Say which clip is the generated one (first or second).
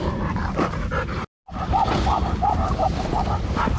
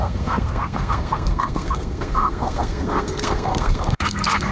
second